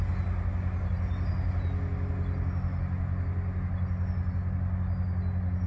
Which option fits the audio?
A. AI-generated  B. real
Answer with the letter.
B